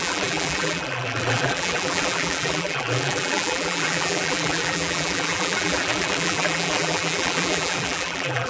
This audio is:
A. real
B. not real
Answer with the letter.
B